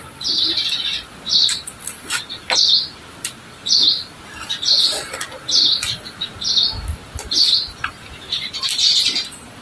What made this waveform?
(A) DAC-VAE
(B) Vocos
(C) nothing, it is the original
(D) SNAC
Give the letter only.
C